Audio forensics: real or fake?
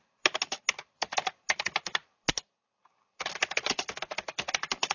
real